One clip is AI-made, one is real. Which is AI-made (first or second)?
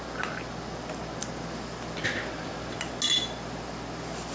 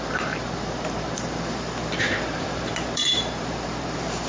second